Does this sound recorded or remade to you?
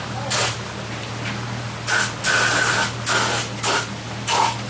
recorded